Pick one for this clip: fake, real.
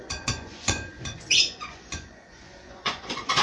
fake